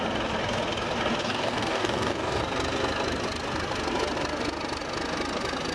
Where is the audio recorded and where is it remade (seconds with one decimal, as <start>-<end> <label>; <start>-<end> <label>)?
0.0-1.2 recorded; 1.2-2.4 remade; 2.4-5.7 recorded